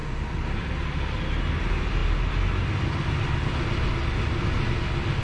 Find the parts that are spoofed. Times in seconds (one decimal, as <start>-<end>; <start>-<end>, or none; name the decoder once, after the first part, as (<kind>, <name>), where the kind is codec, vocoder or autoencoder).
none